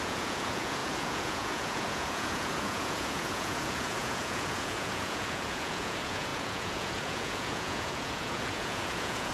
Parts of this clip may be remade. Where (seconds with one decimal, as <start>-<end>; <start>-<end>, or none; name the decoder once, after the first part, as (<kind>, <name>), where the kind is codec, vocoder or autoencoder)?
0.0-9.3 (vocoder, Vocos)

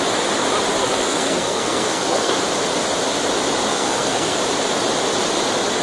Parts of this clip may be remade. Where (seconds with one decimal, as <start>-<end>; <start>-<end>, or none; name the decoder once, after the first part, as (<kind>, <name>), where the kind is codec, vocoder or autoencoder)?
0.8-2.3 (codec, SNAC); 3.7-4.4